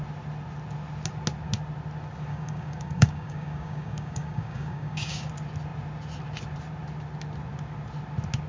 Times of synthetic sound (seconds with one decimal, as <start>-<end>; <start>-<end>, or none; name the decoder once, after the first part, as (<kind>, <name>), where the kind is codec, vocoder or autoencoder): 2.3-5.3 (codec, DAC)